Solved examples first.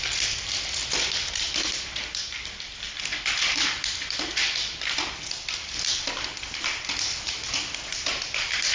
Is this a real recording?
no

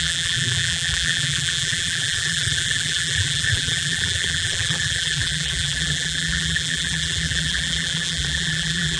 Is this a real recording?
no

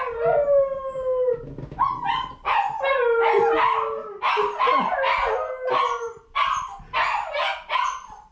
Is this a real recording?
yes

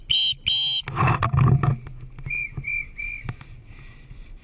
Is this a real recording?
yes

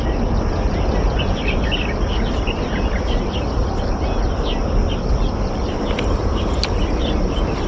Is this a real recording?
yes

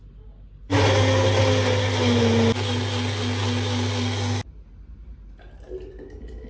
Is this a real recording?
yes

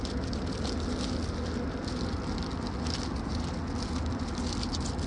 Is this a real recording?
yes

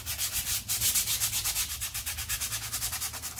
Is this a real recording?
yes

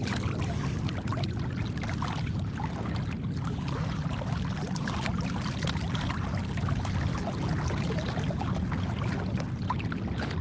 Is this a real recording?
yes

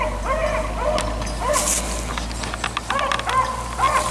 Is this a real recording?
yes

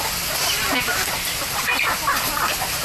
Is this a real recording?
yes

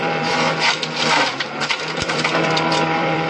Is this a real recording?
no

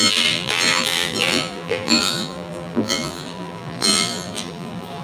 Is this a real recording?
no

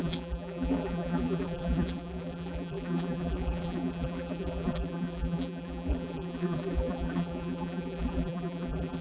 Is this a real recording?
no